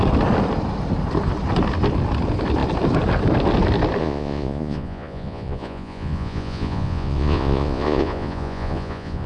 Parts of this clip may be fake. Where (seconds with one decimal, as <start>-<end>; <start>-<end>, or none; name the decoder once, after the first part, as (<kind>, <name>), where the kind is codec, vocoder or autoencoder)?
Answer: 4.0-9.3 (vocoder, Vocos)